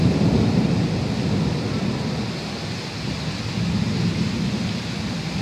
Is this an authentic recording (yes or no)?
yes